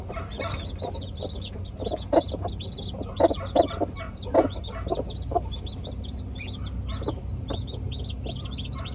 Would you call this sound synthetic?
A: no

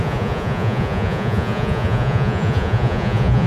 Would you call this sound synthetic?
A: yes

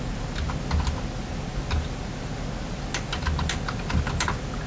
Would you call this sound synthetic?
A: no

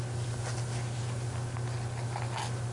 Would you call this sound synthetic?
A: no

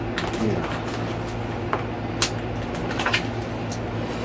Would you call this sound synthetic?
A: no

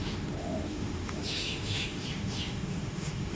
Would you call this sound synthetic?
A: yes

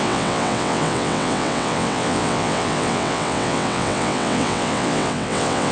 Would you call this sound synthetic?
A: yes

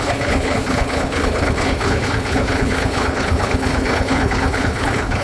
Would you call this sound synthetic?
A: yes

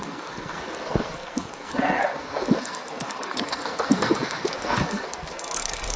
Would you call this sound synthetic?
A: yes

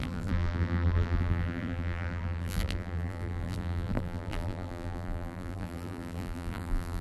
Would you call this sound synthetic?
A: yes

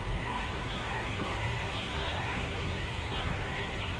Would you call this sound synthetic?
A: yes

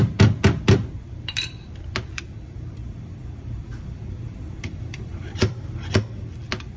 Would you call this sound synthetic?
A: yes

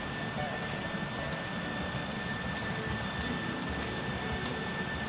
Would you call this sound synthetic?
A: no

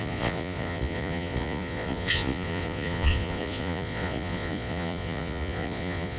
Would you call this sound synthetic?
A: yes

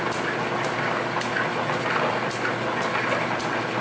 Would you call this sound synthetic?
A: no